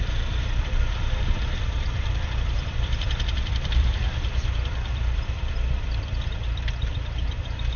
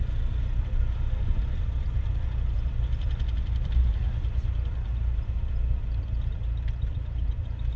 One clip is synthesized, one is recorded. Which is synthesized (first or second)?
first